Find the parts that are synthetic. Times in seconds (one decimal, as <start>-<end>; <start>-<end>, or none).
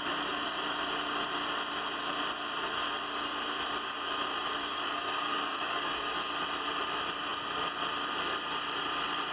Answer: 4.6-6.2